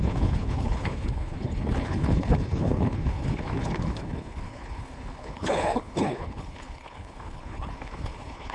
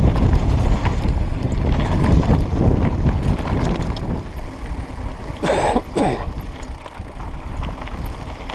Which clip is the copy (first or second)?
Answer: first